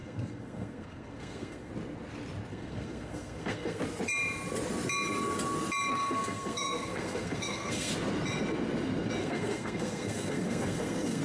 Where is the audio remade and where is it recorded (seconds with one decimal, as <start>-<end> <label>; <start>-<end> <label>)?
0.0-1.7 remade; 1.7-2.5 recorded; 2.5-3.8 remade; 3.8-5.9 recorded; 5.9-7.9 remade; 7.9-9.2 recorded; 9.2-11.2 remade